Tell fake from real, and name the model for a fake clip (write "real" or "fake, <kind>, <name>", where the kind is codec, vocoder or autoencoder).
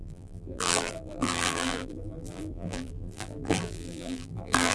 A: fake, vocoder, BigVGAN v2